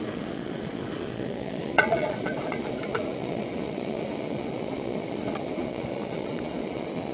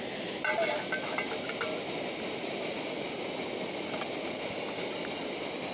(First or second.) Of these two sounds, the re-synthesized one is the first